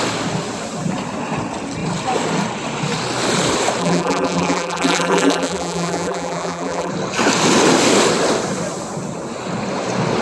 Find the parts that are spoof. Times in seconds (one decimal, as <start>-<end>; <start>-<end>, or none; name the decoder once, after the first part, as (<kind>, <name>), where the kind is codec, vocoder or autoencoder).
3.8-6.9 (vocoder, BigVGAN v2)